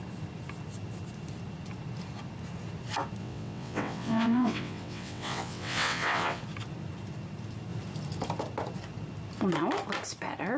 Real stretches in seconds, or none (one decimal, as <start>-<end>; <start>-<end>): 0.0-3.2; 6.4-10.6

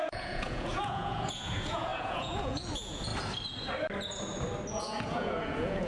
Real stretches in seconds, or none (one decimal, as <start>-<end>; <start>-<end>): 3.1-4.7

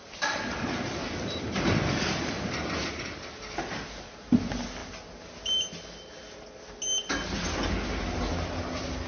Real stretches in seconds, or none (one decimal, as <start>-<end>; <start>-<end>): 0.0-9.1

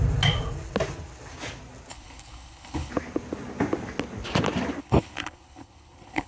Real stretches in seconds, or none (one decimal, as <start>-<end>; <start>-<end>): 0.0-1.9; 2.9-4.8

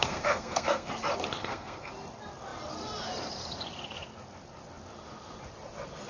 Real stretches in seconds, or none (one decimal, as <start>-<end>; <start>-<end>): 0.9-1.4; 1.9-6.1

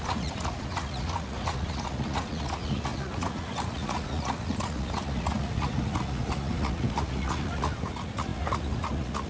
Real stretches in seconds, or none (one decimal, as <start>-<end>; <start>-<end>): none

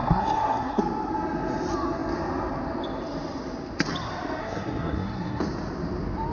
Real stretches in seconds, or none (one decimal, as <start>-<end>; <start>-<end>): 0.8-4.4; 5.4-6.3